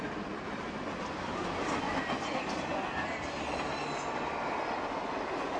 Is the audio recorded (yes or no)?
yes